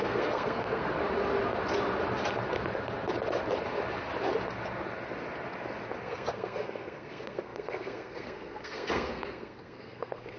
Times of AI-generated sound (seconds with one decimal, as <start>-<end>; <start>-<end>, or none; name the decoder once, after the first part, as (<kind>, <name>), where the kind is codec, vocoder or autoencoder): 0.0-0.8 (codec, SNAC); 6.0-10.4